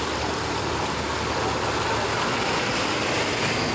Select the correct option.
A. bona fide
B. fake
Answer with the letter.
A